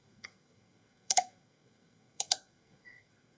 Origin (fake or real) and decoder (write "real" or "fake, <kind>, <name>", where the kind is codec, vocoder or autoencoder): fake, codec, SNAC